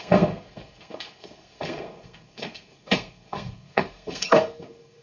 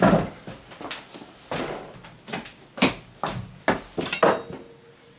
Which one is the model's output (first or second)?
first